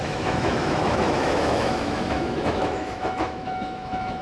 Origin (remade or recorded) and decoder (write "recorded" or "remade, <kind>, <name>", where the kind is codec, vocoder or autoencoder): remade, autoencoder, DAC-VAE